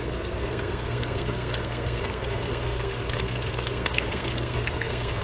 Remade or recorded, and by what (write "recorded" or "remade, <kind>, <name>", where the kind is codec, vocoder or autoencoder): remade, codec, SNAC